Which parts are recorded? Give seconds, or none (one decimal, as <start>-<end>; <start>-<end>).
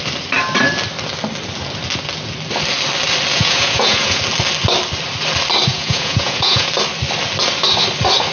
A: 0.0-3.3; 4.2-5.7; 6.7-8.3